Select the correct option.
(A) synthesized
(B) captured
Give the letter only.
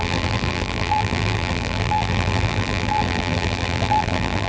A